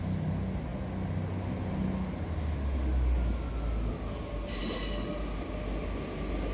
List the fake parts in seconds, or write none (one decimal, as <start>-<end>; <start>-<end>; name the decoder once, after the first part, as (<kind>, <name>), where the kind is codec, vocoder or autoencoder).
none